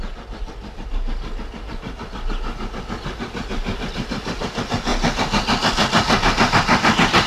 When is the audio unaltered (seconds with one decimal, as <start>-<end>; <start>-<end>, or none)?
0.0-7.3